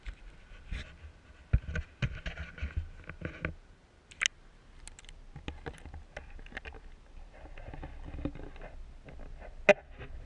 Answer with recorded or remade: recorded